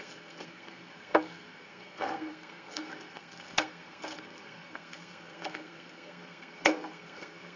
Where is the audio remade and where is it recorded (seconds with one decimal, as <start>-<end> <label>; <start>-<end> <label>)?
0.0-7.6 remade